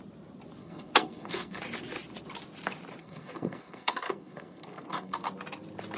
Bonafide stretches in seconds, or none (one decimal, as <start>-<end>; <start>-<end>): 0.0-0.6; 1.6-3.0; 5.3-6.0